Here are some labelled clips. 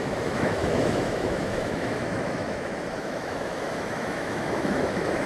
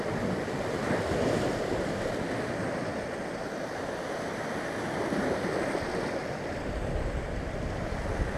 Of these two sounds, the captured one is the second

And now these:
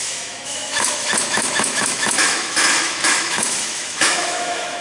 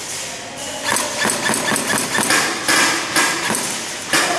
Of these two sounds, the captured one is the second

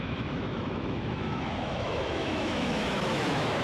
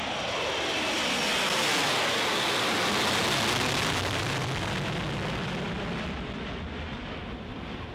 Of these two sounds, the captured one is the second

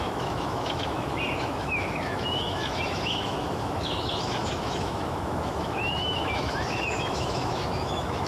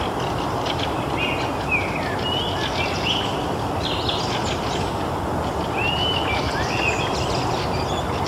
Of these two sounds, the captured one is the second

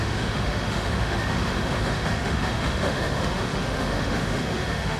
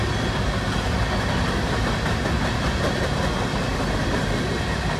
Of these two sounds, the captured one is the second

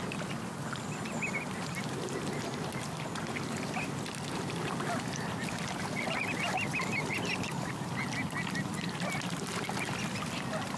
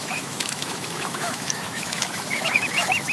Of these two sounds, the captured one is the first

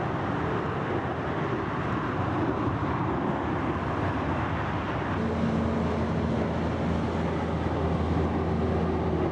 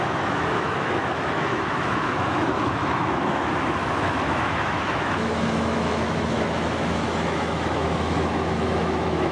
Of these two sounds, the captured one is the first